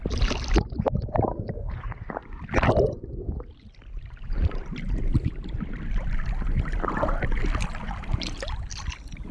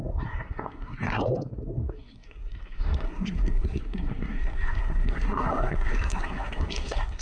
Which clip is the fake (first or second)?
second